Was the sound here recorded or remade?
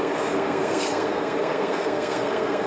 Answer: remade